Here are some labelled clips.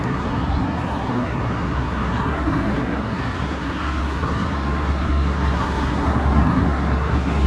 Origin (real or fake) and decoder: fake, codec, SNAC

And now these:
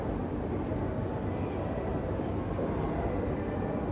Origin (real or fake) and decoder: real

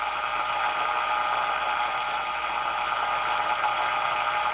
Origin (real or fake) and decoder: real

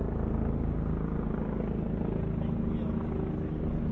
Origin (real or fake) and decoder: real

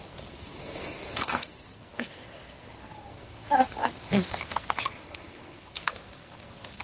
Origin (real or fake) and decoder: fake, codec, SNAC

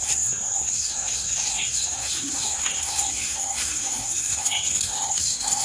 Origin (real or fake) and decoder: fake, codec, SNAC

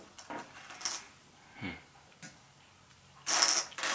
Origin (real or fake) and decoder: real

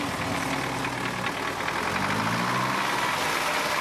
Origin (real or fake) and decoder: real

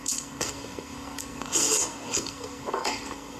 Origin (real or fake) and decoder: fake, codec, SNAC